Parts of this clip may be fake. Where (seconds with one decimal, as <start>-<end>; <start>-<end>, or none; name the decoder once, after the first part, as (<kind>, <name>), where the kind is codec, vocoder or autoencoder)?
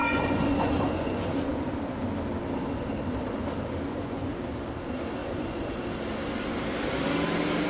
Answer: 0.0-1.7 (vocoder, Vocos); 3.9-4.4; 5.2-5.8